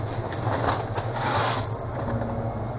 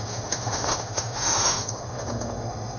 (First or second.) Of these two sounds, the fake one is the second